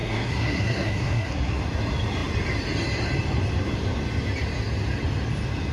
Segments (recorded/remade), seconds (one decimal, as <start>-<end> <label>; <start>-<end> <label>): 0.0-1.6 remade; 1.6-5.7 recorded